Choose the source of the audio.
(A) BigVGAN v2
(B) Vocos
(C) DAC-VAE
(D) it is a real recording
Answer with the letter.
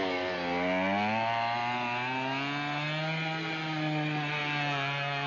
D